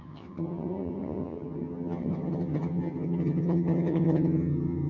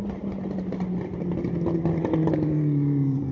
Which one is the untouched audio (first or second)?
second